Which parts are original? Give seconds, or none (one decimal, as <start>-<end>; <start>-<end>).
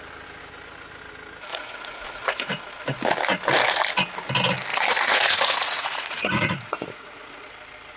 0.0-1.5; 2.5-4.7; 7.4-8.0